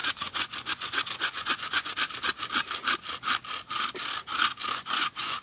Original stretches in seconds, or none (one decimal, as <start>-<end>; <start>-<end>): 1.9-4.7